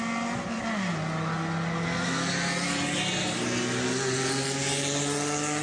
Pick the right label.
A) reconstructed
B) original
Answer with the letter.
B